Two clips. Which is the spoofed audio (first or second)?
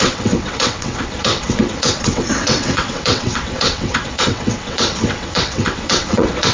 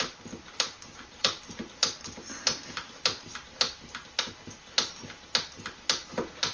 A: first